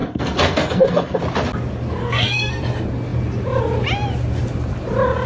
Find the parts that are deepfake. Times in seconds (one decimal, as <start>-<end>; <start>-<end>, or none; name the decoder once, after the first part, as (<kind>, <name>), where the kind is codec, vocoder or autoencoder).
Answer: 0.0-1.2 (codec, SNAC); 2.0-2.6